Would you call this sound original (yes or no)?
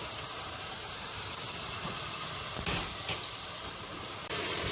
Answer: no